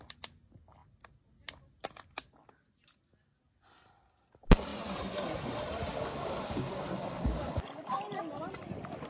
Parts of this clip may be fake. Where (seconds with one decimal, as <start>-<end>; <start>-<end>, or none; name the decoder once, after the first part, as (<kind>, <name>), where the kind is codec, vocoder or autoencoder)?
5.9-8.0 (codec, DAC)